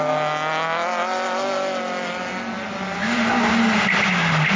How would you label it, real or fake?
real